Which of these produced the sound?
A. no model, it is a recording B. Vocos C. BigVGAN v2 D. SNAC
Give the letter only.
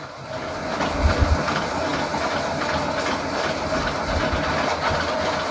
A